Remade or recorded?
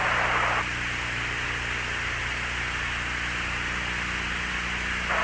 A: recorded